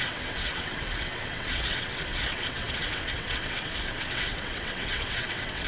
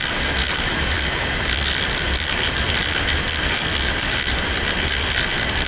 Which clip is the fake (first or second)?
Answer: first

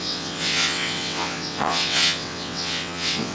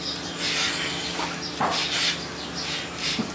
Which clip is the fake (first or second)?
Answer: first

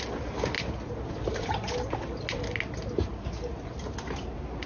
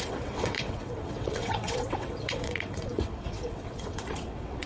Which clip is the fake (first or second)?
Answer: second